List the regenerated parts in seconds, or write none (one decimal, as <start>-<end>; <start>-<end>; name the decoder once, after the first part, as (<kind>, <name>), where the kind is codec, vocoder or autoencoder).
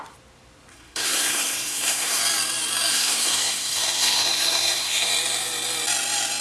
0.7-2.2 (codec, SNAC); 2.9-5.1